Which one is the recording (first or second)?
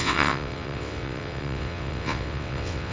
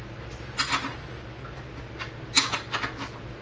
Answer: second